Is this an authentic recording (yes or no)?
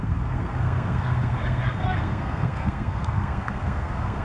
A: no